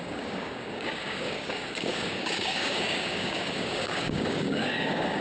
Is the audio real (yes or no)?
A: no